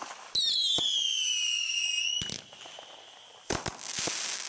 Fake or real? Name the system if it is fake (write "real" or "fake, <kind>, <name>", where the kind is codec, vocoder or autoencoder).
real